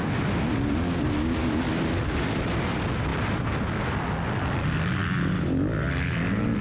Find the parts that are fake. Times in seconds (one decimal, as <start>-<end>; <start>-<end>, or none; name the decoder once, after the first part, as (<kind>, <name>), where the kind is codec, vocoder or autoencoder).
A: none